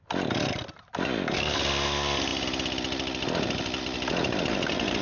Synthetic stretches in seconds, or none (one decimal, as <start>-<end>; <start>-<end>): none

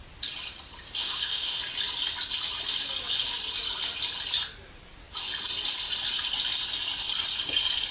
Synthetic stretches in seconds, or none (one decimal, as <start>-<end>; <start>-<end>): 1.0-1.6

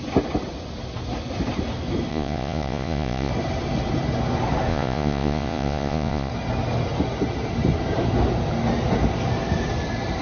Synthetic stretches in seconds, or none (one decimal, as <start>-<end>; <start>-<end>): 2.1-3.3; 4.7-6.3

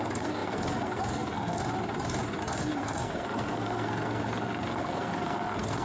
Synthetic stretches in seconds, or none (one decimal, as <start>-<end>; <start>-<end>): 0.0-1.6; 2.4-5.8